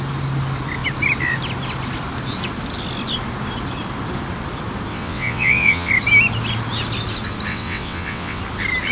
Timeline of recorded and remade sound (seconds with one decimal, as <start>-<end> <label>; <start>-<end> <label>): 0.0-4.9 recorded; 4.9-5.9 remade; 5.9-7.5 recorded; 7.5-8.4 remade; 8.4-8.9 recorded